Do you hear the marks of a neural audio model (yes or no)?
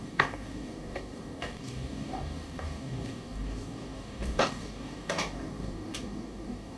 yes